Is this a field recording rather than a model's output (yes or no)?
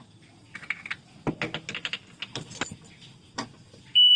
yes